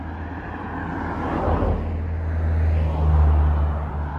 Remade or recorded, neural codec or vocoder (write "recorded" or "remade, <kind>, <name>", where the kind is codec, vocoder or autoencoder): recorded